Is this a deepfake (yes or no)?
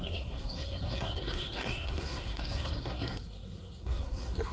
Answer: yes